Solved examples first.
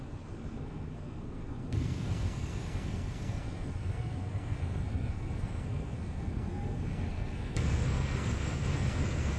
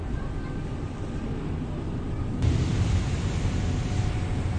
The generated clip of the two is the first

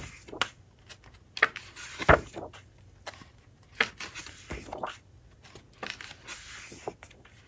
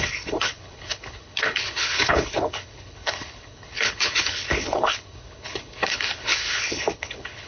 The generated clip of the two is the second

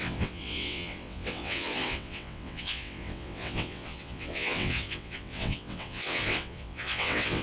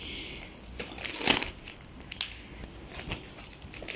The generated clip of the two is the first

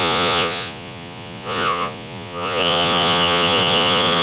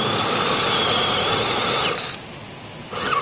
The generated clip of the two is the first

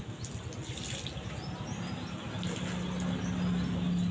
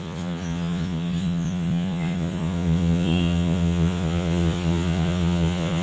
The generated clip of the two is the second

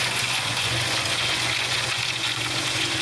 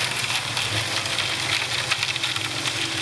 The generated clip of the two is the first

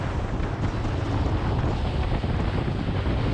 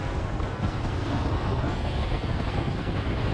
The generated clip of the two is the second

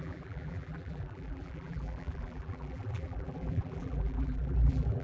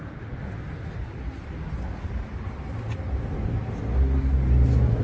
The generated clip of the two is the first